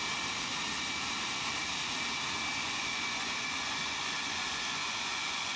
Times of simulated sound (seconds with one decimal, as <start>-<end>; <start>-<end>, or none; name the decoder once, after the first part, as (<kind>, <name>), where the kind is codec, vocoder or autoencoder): 2.6-5.6 (vocoder, Vocos)